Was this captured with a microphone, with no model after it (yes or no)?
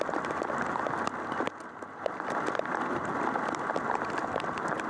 yes